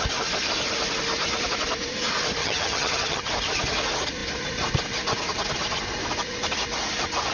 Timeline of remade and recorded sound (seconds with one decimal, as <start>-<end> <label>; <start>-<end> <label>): 0.0-2.4 recorded; 2.4-3.3 remade; 3.3-7.3 recorded